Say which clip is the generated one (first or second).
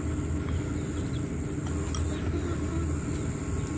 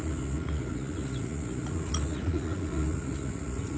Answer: second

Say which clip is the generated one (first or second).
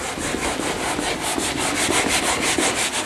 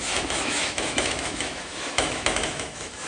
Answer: second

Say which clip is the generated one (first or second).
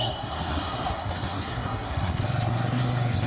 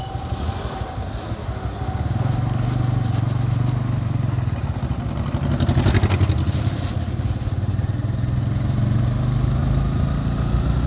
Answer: first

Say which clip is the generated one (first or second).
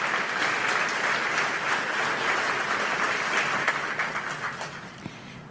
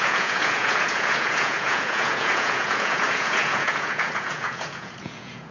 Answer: second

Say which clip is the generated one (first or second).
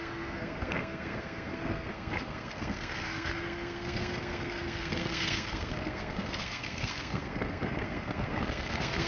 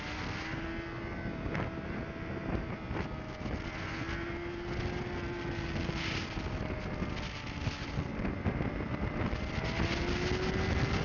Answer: first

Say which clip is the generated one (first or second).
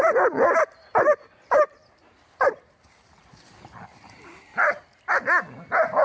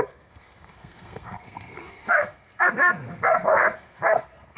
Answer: second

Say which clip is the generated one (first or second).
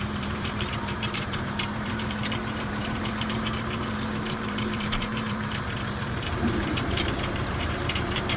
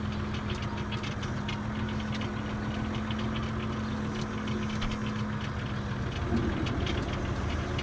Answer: first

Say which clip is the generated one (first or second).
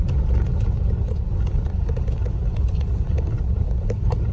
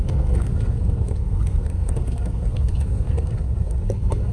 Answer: second